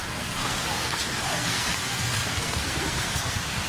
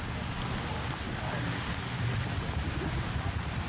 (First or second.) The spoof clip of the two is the first